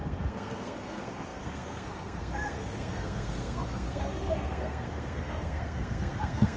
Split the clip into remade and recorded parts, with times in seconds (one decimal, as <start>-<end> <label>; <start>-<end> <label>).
0.0-6.6 remade